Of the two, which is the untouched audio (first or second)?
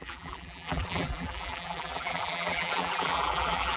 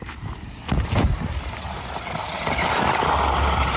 second